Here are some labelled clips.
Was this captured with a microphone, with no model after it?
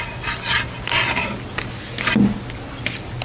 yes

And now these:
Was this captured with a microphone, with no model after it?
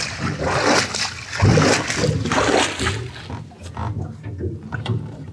yes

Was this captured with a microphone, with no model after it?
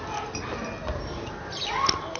yes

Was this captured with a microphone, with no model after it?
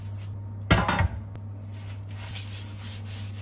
yes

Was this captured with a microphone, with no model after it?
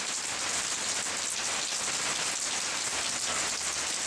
yes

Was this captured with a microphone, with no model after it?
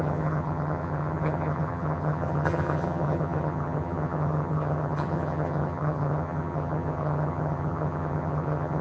no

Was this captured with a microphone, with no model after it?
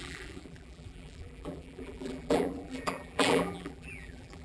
no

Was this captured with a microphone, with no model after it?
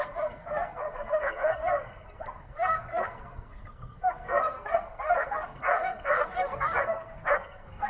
no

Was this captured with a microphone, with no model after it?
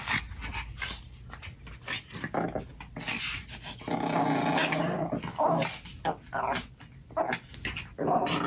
yes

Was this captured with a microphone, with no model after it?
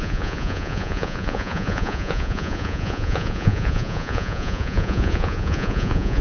no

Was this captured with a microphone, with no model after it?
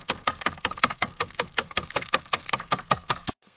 no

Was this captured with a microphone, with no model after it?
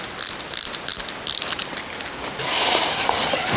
yes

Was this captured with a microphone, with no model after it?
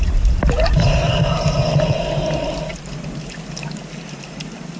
yes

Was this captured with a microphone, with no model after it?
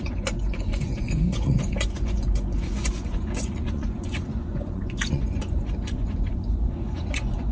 no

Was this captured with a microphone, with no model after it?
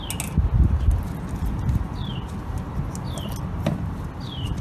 yes